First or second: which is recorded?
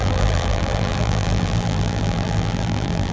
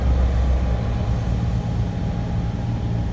second